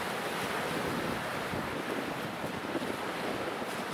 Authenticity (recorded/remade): recorded